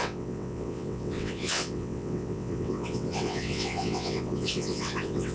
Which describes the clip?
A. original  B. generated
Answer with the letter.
B